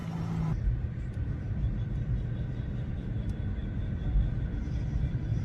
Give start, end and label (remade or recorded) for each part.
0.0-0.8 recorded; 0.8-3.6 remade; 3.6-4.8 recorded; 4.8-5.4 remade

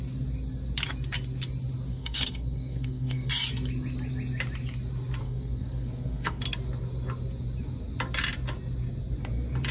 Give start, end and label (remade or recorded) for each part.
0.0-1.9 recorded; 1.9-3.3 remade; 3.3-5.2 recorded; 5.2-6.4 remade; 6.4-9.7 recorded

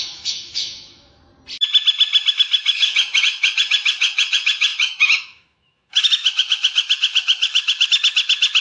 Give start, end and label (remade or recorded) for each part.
0.0-1.3 remade; 1.3-2.3 recorded; 2.3-8.6 remade

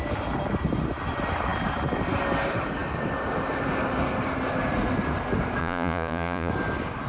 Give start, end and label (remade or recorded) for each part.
0.0-5.6 recorded; 5.6-6.5 remade; 6.5-7.1 recorded